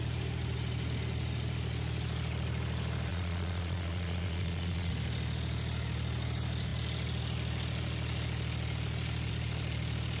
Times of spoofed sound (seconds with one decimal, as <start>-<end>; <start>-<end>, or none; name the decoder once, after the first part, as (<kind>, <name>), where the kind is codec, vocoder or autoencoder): 3.1-4.9 (vocoder, Vocos)